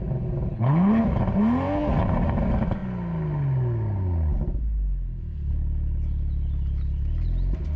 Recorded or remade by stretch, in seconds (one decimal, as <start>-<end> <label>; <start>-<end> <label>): 0.0-0.5 recorded; 0.5-1.0 remade; 1.0-7.8 recorded